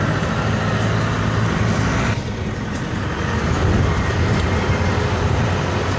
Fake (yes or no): no